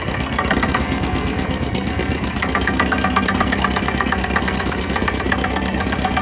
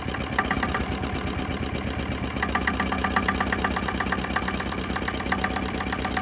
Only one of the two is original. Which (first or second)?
second